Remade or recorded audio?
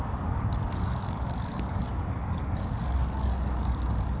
remade